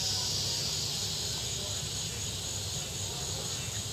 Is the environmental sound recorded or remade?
recorded